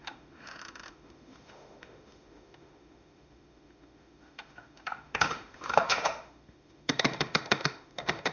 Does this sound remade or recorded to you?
remade